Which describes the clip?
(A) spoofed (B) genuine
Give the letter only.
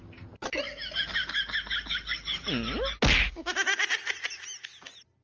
B